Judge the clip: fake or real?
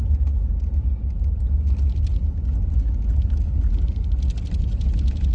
real